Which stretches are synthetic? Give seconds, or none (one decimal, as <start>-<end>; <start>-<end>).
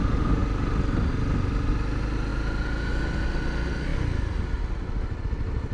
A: none